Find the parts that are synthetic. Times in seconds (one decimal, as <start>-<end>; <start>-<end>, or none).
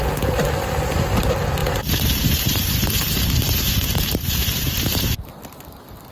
1.6-5.3